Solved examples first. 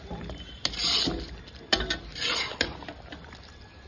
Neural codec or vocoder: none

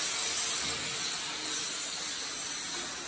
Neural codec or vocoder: none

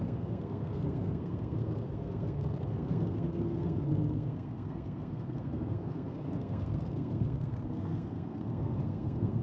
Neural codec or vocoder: codec, SNAC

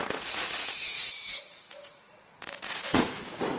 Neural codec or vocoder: vocoder, Vocos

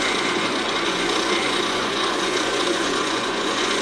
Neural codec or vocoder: vocoder, Vocos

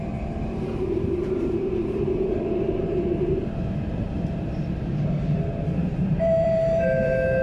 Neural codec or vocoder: vocoder, BigVGAN v2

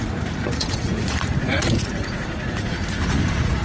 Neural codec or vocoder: vocoder, Vocos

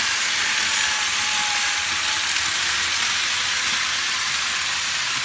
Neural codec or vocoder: none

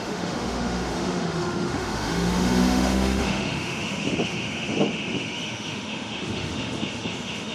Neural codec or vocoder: autoencoder, DAC-VAE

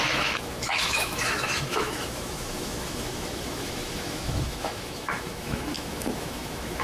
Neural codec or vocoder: autoencoder, DAC-VAE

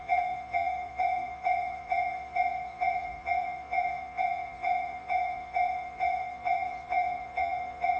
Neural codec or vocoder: vocoder, Vocos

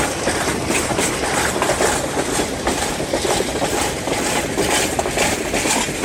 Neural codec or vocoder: none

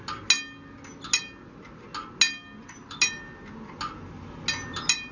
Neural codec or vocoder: none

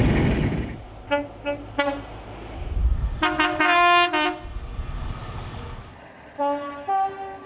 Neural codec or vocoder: none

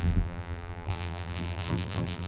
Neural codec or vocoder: vocoder, BigVGAN v2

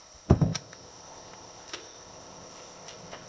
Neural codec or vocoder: codec, ZipCodec